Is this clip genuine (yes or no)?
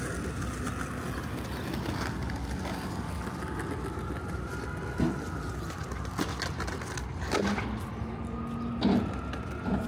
yes